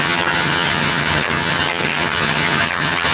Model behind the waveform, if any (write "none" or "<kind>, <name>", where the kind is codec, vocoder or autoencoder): vocoder, HiFi-GAN